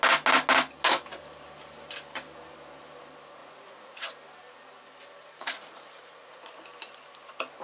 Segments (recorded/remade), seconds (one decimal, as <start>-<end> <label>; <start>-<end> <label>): 0.0-3.4 recorded; 3.4-4.1 remade; 4.1-5.2 recorded; 5.2-6.6 remade; 6.6-7.6 recorded